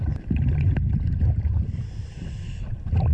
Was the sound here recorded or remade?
recorded